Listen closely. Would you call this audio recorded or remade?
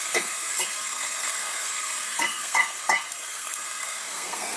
remade